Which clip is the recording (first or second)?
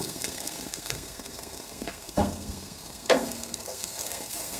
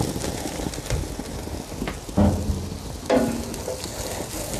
second